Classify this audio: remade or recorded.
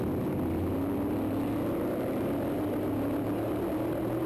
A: recorded